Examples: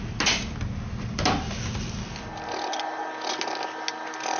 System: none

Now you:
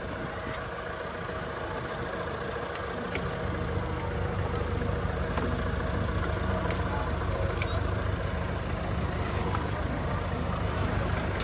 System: none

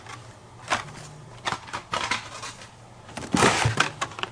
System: none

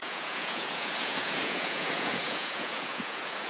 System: vocoder, Vocos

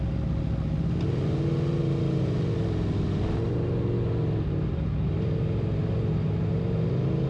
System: none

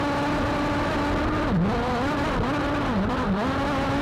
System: none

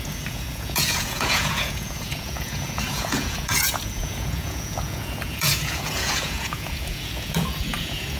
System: vocoder, Vocos